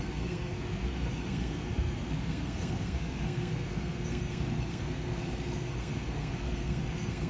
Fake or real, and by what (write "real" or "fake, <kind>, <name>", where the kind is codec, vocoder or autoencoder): fake, codec, SNAC